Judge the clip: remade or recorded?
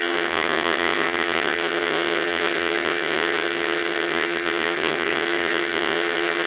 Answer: remade